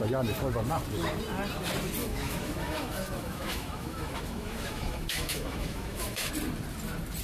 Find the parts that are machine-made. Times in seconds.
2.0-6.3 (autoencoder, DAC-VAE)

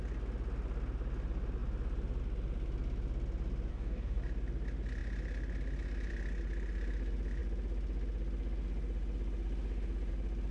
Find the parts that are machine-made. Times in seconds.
3.7-4.2 (codec, DAC)

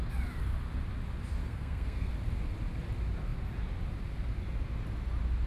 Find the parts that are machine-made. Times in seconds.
1.4-2.1 (codec, SNAC)

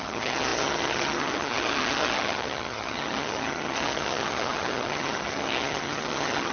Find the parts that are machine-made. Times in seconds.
0.0-6.5 (vocoder, HiFi-GAN)

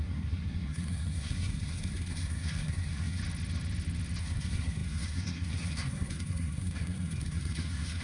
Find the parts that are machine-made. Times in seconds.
0.0-3.2 (codec, SNAC); 4.2-8.0